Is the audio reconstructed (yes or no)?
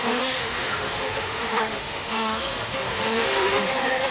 yes